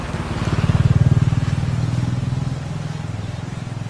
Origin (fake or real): real